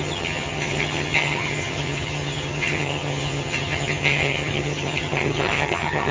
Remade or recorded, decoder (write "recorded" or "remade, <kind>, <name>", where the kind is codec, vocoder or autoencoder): remade, vocoder, HiFi-GAN